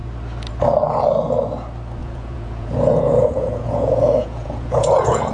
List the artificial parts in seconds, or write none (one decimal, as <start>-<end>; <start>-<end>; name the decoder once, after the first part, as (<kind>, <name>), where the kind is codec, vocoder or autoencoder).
2.0-5.3 (vocoder, Vocos)

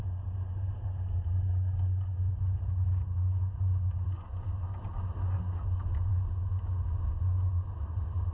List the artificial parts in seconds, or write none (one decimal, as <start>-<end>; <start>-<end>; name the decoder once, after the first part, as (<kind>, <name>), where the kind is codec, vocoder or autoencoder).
none

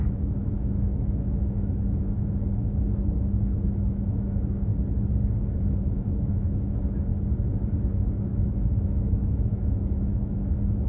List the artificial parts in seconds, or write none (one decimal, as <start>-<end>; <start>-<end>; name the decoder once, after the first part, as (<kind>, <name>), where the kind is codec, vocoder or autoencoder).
0.0-4.7 (autoencoder, DAC-VAE); 5.6-7.1; 7.9-10.9

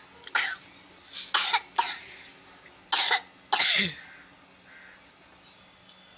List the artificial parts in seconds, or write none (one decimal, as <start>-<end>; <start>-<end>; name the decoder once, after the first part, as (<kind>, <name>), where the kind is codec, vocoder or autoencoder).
none